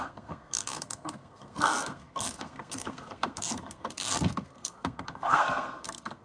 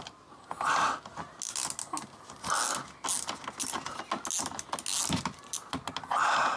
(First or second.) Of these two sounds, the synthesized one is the first